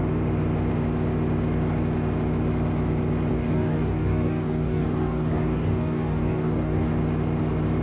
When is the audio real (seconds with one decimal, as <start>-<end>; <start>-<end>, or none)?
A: 0.0-3.3; 6.9-7.8